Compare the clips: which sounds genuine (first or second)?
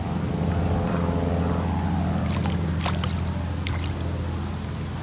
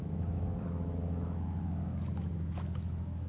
first